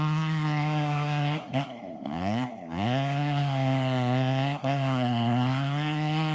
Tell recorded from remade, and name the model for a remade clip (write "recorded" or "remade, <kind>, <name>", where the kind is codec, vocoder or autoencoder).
remade, codec, SNAC